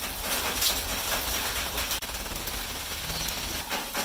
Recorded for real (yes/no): yes